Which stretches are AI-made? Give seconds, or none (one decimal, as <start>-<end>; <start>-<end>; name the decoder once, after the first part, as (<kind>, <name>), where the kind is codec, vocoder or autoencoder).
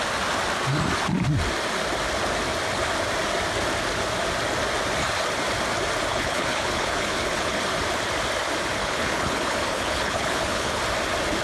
6.1-7.6 (codec, HILCodec); 8.8-10.8